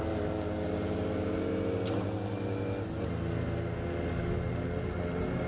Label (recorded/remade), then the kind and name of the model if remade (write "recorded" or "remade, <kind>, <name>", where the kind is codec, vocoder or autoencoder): recorded